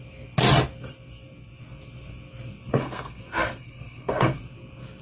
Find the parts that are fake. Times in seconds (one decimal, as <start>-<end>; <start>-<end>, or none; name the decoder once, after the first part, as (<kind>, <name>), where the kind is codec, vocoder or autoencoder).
2.7-4.4 (codec, SNAC)